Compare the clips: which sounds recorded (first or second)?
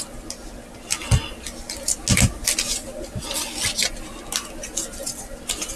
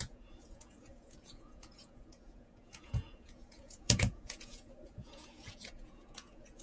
first